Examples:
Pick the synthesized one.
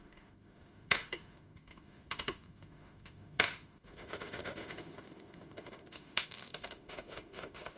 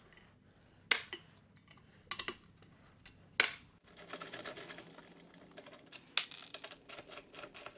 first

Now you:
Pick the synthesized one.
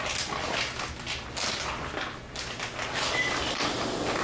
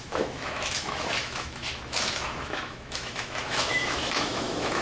second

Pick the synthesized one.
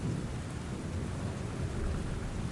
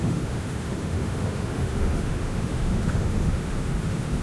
second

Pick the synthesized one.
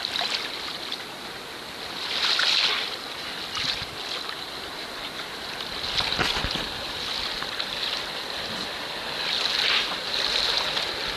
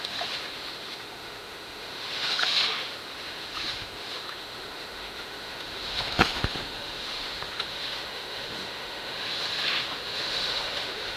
second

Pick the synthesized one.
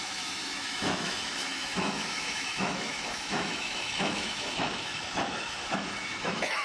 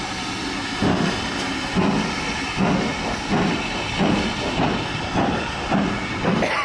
first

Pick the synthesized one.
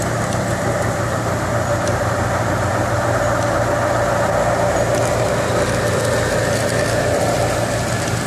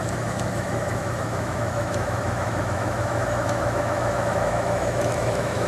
second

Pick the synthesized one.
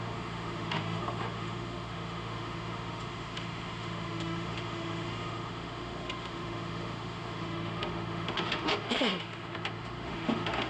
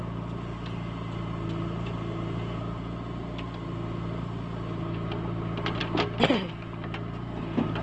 first